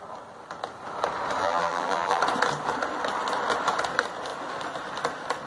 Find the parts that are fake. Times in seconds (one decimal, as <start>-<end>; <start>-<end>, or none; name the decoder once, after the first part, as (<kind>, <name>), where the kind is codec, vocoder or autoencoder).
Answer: 1.4-2.2 (vocoder, BigVGAN v2)